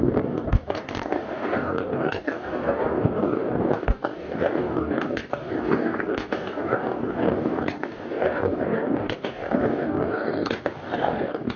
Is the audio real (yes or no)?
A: no